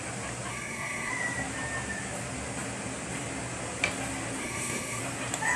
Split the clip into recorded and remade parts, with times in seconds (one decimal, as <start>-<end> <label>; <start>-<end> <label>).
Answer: 0.0-0.5 recorded; 0.5-1.1 remade; 1.1-4.4 recorded; 4.4-5.0 remade; 5.0-5.6 recorded